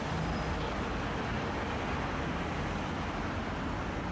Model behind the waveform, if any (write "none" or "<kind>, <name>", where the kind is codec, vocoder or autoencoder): none